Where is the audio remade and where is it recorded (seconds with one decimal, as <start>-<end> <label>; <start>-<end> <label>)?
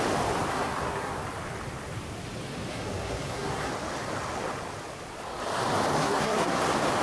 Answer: 0.0-0.5 recorded; 0.5-1.1 remade; 1.1-2.7 recorded; 2.7-3.7 remade; 3.7-6.0 recorded; 6.0-6.6 remade; 6.6-7.0 recorded